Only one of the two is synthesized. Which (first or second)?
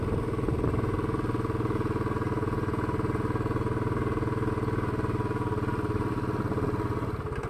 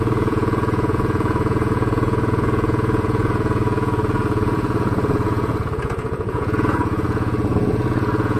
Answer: second